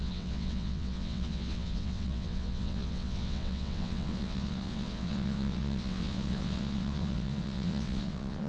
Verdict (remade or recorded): remade